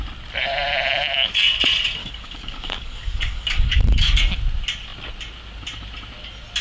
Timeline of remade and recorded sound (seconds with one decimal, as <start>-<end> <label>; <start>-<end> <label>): 0.0-2.0 recorded; 2.0-4.2 remade; 4.2-6.6 recorded